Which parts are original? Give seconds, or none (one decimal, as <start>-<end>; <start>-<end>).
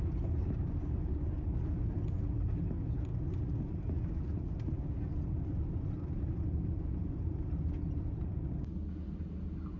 0.0-9.8